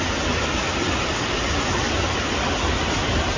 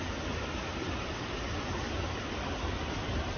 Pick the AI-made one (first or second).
second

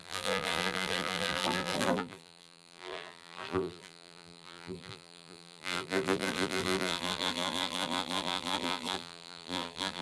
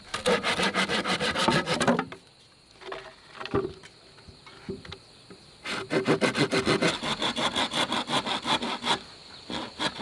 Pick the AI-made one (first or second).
first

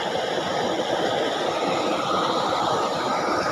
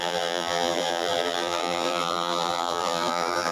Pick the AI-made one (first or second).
second